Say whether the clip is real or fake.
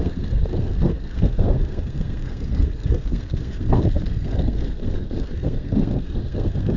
fake